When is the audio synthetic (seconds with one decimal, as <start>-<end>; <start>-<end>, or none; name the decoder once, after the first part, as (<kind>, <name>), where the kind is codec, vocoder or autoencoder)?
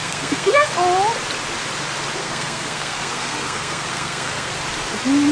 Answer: 0.0-0.7 (codec, SNAC); 2.2-4.5